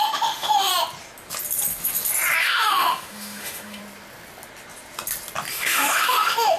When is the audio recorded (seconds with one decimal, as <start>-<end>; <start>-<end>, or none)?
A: 0.7-2.4; 3.8-5.5